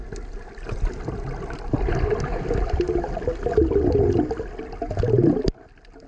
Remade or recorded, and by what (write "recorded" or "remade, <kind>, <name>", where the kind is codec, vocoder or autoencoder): recorded